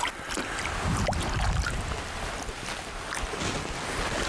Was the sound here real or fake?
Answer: real